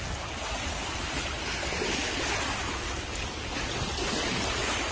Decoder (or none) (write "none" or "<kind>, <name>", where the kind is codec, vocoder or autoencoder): none